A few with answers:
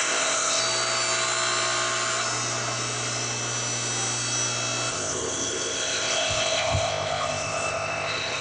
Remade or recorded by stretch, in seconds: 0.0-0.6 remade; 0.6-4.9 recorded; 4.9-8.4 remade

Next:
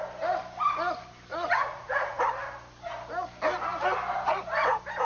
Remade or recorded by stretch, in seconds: 0.0-1.3 recorded; 1.3-2.2 remade; 2.2-5.0 recorded

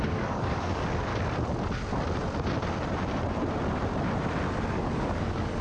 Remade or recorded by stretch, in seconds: 0.0-1.1 remade; 1.1-4.5 recorded; 4.5-5.6 remade

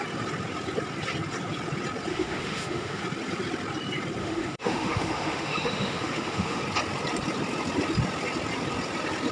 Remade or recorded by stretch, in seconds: 0.0-2.1 recorded; 2.1-3.0 remade; 3.0-4.2 recorded; 4.2-6.6 remade; 6.6-9.3 recorded